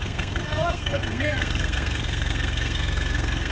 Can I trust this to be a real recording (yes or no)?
no